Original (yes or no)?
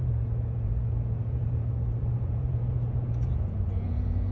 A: no